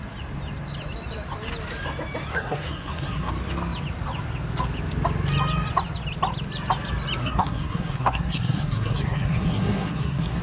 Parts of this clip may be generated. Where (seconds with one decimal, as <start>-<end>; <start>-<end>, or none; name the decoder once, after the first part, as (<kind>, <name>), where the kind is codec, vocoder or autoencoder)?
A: 2.3-3.3 (codec, SNAC); 7.2-10.4